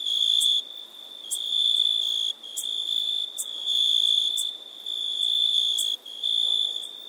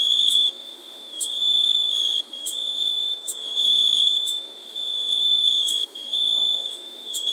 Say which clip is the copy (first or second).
second